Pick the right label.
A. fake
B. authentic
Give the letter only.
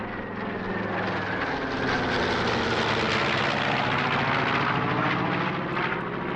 B